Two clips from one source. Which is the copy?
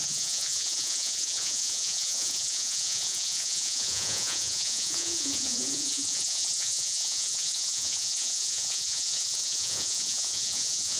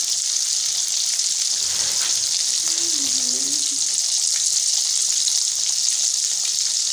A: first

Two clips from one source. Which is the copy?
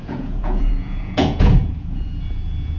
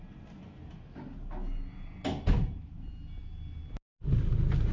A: first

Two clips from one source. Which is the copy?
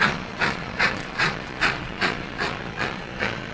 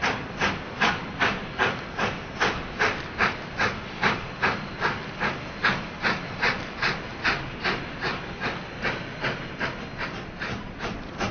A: first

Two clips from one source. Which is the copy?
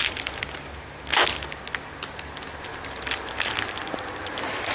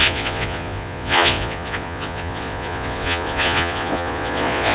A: second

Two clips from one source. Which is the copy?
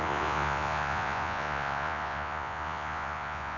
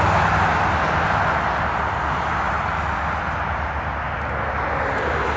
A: first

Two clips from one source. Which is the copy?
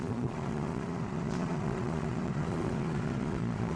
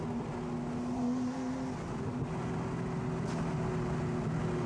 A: first